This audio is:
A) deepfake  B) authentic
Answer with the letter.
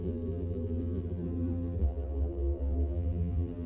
A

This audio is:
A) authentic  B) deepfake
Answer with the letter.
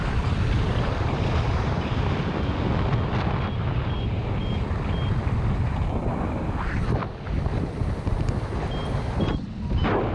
A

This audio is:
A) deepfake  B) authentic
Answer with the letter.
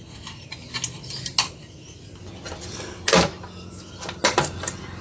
B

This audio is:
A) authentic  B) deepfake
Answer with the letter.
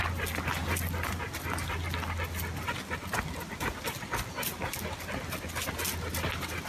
A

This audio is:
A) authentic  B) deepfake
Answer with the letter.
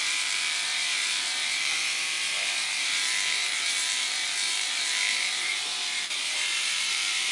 B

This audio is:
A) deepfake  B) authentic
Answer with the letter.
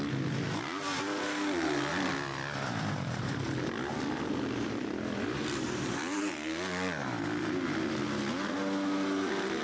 B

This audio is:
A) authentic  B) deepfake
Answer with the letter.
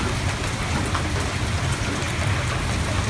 A